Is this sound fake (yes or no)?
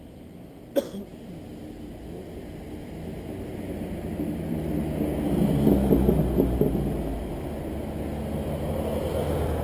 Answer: no